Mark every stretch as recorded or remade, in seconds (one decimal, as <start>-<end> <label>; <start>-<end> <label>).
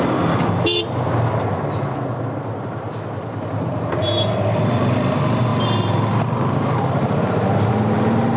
0.0-8.4 recorded